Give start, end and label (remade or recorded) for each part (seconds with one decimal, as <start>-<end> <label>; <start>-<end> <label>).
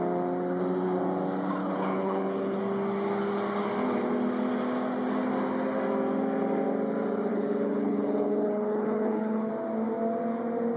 0.0-1.6 recorded; 1.6-2.6 remade; 2.6-7.3 recorded; 7.3-9.5 remade; 9.5-10.8 recorded